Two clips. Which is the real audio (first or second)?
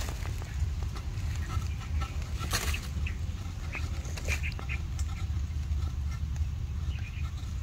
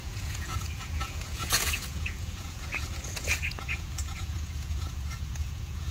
first